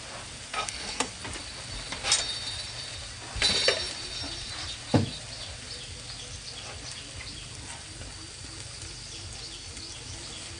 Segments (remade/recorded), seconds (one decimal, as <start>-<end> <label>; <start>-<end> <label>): 0.0-0.5 recorded; 0.5-1.1 remade; 1.1-10.6 recorded